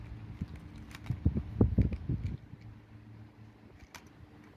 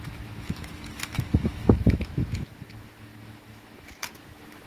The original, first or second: first